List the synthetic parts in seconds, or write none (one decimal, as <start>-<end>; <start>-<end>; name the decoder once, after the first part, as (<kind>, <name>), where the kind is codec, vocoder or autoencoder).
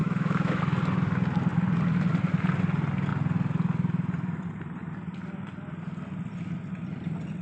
0.0-0.6 (autoencoder, DAC-VAE)